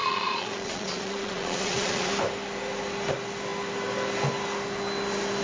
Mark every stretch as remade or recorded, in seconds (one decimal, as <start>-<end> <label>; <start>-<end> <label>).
0.0-2.1 remade; 2.1-5.4 recorded